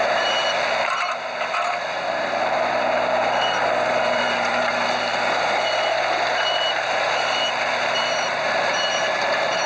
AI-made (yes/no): yes